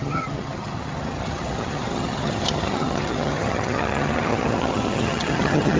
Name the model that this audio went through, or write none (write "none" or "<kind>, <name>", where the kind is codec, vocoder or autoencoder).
vocoder, HiFi-GAN